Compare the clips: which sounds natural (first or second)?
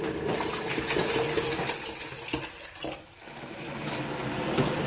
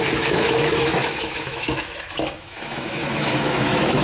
first